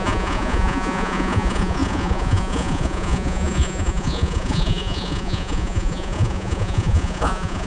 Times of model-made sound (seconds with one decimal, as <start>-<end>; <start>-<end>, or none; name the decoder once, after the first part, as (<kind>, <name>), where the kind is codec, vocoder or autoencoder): 0.0-7.7 (vocoder, Vocos)